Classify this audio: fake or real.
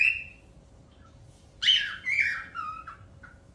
real